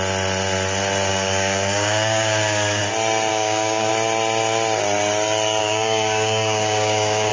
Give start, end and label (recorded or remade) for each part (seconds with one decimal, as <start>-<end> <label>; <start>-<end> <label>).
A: 0.0-1.1 recorded; 1.1-2.8 remade; 2.8-3.3 recorded; 3.3-3.9 remade; 3.9-5.6 recorded; 5.6-7.3 remade